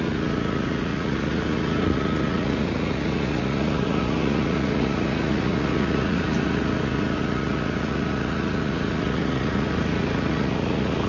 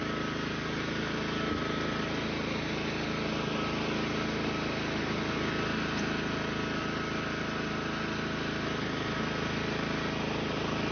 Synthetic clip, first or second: first